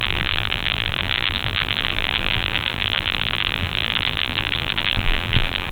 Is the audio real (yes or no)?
no